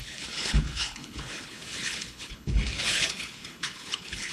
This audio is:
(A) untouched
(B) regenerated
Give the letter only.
B